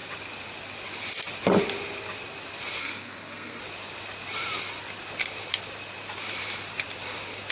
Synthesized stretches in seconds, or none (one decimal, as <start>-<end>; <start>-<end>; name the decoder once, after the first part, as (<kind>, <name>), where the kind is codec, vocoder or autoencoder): 2.8-3.6 (codec, SNAC)